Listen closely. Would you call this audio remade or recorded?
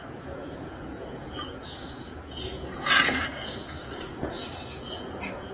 remade